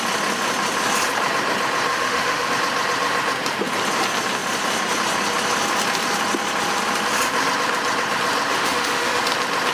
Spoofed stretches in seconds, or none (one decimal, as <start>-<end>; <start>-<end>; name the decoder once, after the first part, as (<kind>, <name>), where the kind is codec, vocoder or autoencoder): 1.9-2.5 (autoencoder, DAC-VAE); 8.5-9.2